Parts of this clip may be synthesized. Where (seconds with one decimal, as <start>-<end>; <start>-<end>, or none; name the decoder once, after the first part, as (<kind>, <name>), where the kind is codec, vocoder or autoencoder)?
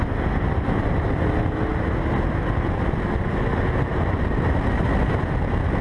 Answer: none